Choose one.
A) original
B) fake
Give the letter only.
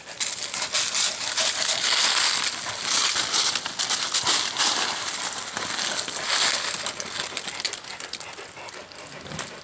A